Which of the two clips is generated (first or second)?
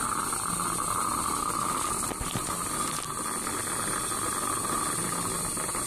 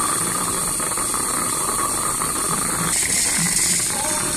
second